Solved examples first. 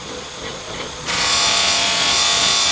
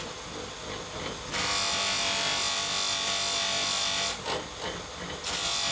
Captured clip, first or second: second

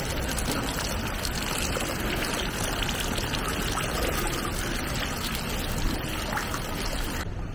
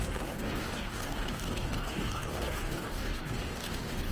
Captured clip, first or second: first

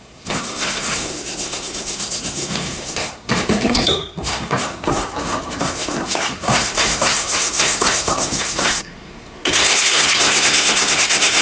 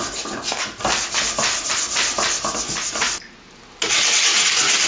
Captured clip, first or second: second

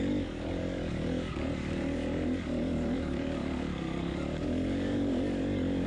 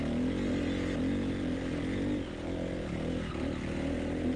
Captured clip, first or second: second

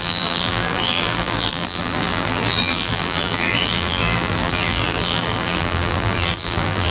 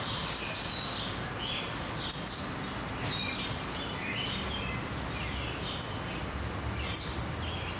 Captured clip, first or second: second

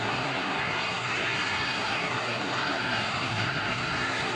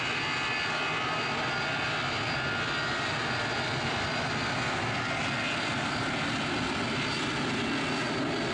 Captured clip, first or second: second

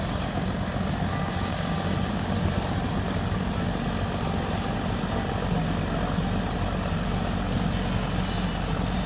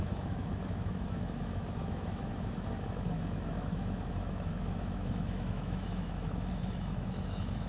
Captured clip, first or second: first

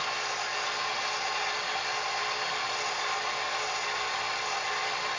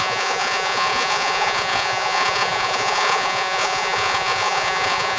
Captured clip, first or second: first